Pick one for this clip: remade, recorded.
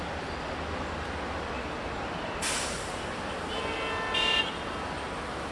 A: recorded